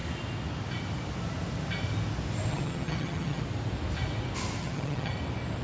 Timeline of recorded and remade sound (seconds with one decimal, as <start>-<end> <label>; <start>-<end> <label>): 0.0-2.5 recorded; 2.5-3.4 remade; 3.4-4.6 recorded; 4.6-5.1 remade; 5.1-5.6 recorded